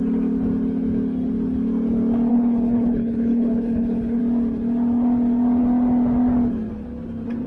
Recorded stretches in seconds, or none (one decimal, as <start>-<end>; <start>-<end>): 0.0-2.3; 4.2-7.5